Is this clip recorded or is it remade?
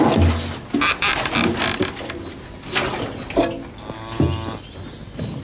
recorded